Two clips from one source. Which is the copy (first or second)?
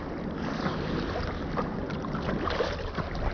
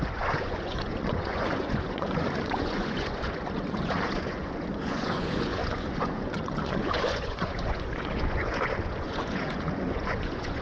second